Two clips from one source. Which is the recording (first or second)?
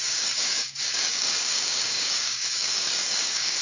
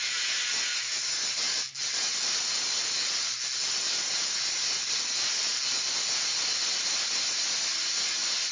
second